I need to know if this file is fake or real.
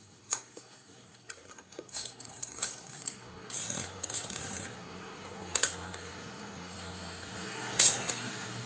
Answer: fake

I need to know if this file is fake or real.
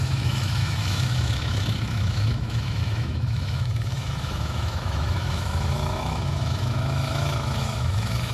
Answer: fake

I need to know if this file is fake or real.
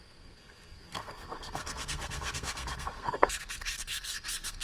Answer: fake